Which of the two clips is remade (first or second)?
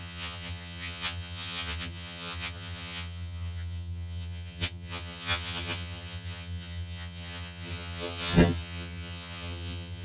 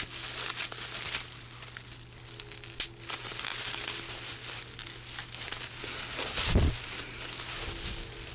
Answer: first